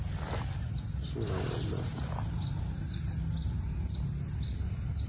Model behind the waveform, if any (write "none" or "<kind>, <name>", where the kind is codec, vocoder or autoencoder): none